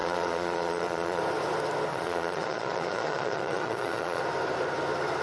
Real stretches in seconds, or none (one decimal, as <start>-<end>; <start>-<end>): 1.2-1.9; 4.2-5.2